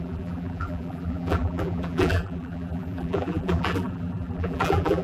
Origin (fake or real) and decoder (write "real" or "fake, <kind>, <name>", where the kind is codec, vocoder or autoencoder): fake, vocoder, BigVGAN v2